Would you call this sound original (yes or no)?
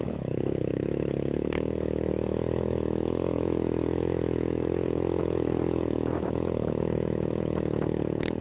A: no